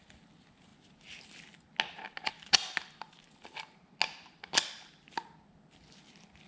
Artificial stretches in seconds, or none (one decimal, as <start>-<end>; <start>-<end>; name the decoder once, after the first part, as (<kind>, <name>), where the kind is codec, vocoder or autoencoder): none